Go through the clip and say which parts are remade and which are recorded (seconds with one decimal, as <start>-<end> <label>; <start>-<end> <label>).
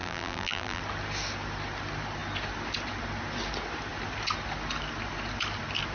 0.0-0.8 remade; 0.8-5.9 recorded